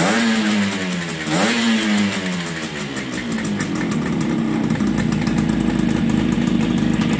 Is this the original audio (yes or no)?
yes